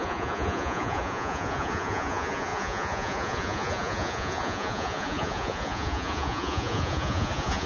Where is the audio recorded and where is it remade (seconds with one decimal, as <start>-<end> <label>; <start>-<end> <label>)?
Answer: 0.0-7.7 remade